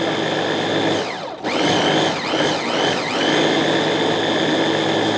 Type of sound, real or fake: real